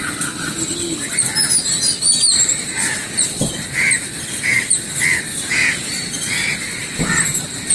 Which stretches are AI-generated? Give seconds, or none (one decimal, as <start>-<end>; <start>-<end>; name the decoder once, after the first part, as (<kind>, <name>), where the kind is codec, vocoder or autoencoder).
none